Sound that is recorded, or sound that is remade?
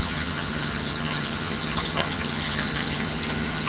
remade